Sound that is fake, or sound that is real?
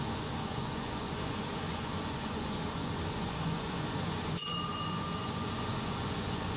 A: fake